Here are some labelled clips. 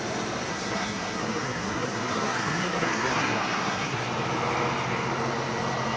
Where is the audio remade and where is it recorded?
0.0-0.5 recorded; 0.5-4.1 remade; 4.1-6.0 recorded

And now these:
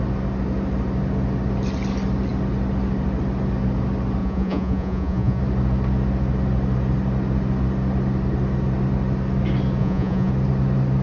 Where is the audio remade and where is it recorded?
0.0-4.2 recorded; 4.2-5.4 remade; 5.4-9.8 recorded; 9.8-10.3 remade; 10.3-11.0 recorded

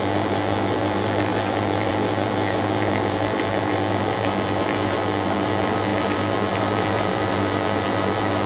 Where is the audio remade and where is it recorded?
0.0-8.5 remade

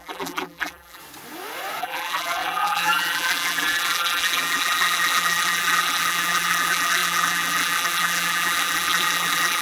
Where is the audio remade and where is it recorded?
0.0-1.0 remade; 1.0-1.8 recorded; 1.8-9.6 remade

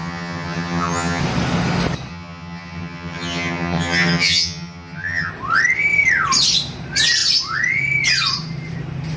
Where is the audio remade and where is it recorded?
0.0-1.2 remade; 1.2-2.1 recorded; 2.1-5.3 remade; 5.3-9.2 recorded